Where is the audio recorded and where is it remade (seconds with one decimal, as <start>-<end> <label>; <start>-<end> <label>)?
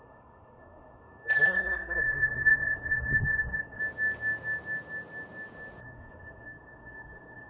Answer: 0.0-3.8 remade; 3.8-5.8 recorded; 5.8-7.5 remade